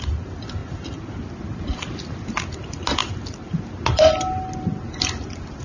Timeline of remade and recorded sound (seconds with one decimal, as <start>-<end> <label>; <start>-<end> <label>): 0.0-5.6 recorded